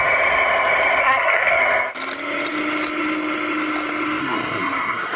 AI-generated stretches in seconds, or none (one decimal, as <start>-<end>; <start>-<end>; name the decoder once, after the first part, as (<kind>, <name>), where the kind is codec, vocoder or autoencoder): 1.0-1.6 (codec, SNAC); 4.2-5.2